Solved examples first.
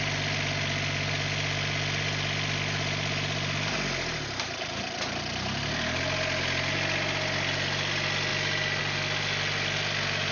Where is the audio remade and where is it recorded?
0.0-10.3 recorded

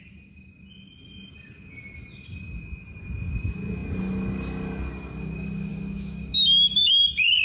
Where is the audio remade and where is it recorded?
0.0-5.7 recorded; 5.7-6.9 remade; 6.9-7.4 recorded

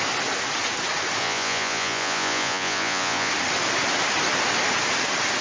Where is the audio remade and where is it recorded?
0.0-1.2 recorded; 1.2-3.3 remade; 3.3-5.4 recorded

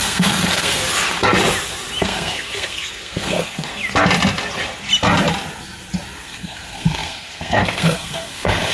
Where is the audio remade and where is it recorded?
0.0-0.8 remade; 0.8-2.0 recorded; 2.0-3.8 remade; 3.8-6.2 recorded; 6.2-8.7 remade